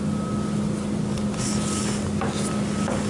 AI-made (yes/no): no